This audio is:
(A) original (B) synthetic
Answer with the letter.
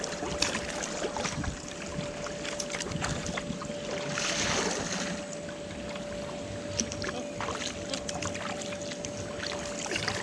A